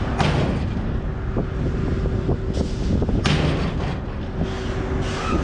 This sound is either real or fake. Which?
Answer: real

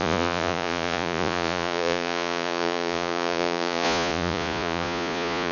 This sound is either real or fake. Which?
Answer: fake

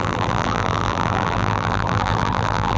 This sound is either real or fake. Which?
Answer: fake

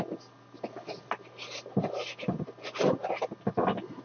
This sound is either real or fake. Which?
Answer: real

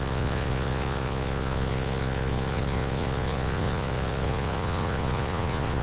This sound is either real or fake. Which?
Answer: fake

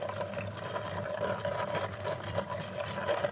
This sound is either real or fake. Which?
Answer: real